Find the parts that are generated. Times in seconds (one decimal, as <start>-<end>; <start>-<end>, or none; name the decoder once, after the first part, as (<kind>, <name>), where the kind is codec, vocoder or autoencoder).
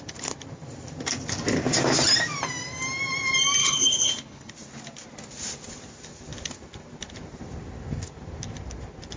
3.6-4.5 (codec, HILCodec)